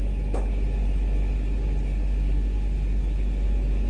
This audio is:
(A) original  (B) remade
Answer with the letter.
A